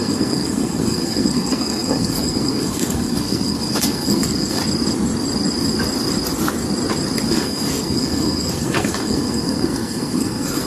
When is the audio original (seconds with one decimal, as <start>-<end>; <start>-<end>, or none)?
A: 4.6-7.3